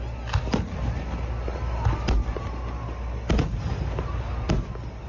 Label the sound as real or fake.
real